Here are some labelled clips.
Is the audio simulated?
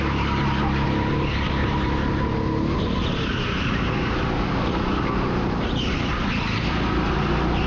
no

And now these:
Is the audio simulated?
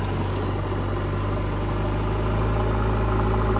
no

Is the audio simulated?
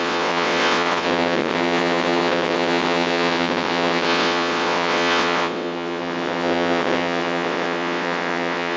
yes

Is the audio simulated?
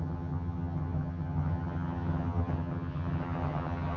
yes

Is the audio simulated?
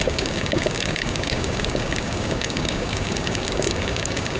yes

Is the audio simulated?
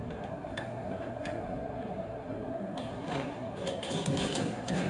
yes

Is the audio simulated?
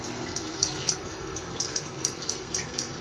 yes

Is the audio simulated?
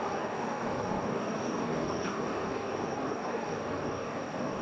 yes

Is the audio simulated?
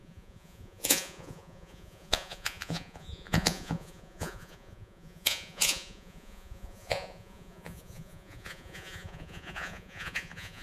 yes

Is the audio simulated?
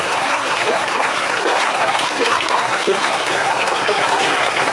yes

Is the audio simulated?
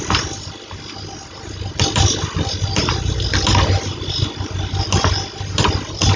no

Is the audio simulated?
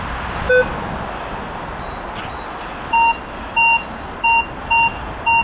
no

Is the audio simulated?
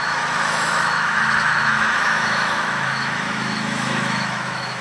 yes